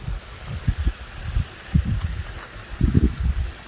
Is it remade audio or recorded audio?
recorded